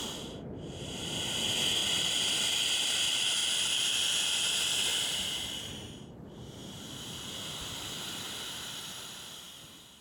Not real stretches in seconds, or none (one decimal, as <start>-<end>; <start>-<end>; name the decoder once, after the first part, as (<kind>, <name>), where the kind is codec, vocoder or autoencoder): 1.8-2.5 (vocoder, BigVGAN v2); 3.4-4.1; 4.9-5.7; 6.6-9.6